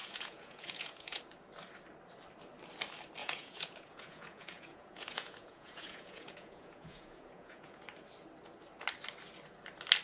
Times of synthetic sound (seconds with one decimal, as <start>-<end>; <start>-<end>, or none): 0.0-1.2; 3.2-7.8

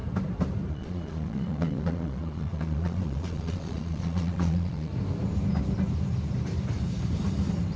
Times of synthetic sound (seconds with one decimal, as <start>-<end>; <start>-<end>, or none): 0.7-4.9

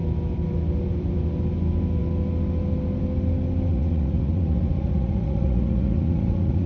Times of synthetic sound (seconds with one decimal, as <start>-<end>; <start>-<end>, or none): 3.7-6.7

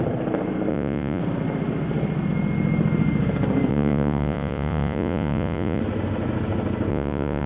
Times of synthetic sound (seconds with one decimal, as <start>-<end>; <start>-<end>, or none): 0.7-1.2; 3.7-5.8; 6.9-7.5

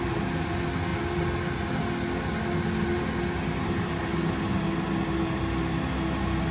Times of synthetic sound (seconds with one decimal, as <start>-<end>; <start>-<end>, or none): none

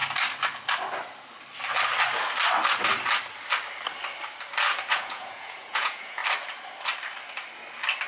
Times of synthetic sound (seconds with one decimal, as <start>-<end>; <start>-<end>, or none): 4.9-6.2

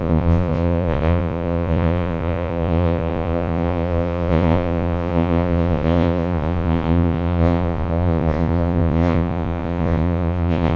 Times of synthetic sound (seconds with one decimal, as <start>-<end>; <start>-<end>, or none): 0.0-10.8